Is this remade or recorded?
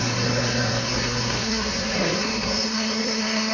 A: remade